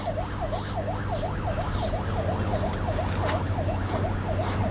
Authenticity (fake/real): real